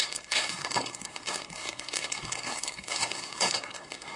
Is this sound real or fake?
fake